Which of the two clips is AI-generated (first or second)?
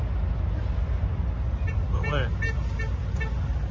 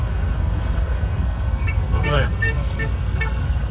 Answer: second